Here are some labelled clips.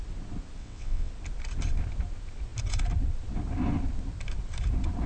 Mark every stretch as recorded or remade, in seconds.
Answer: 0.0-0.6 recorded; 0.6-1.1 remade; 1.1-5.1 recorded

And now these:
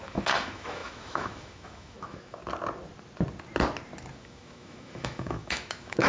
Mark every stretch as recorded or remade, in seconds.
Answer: 0.0-2.4 remade; 2.4-4.1 recorded; 4.1-6.1 remade

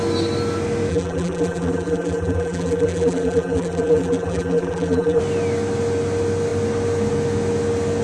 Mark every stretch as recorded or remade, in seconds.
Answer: 0.0-0.9 recorded; 0.9-5.2 remade; 5.2-8.0 recorded

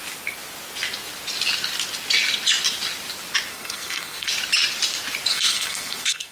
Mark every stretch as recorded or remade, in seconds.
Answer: 0.0-3.5 recorded; 3.5-4.3 remade; 4.3-5.3 recorded; 5.3-6.3 remade

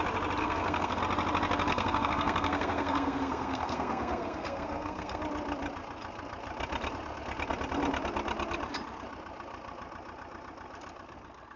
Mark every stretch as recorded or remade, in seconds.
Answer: 0.0-0.4 recorded; 0.4-1.0 remade; 1.0-1.7 recorded; 1.7-5.2 remade; 5.2-11.6 recorded

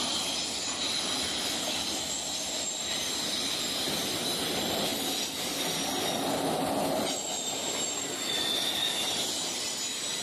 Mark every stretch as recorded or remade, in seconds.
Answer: 0.0-10.2 recorded

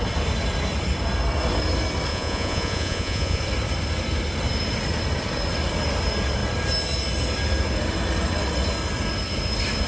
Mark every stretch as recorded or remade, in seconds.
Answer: 0.0-2.1 recorded; 2.1-3.4 remade; 3.4-9.9 recorded